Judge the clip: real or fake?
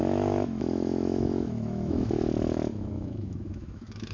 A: fake